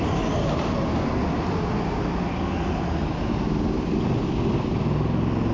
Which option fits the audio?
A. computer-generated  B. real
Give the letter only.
B